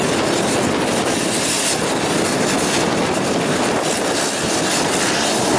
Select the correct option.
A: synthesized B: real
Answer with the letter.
B